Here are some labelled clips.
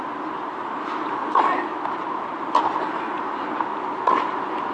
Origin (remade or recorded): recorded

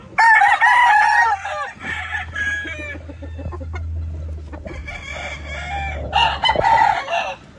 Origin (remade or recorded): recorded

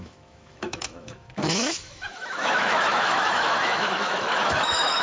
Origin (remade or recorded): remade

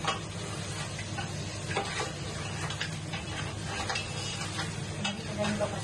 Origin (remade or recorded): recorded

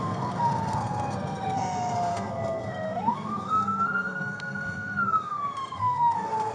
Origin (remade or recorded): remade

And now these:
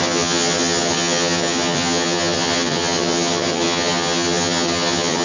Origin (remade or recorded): remade